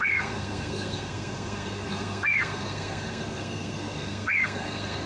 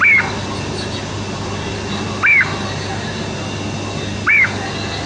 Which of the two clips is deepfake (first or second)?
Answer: first